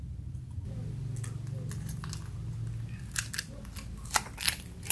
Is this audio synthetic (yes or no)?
no